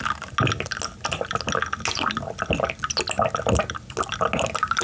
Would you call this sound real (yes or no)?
yes